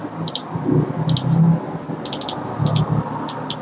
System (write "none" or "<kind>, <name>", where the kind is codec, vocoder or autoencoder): none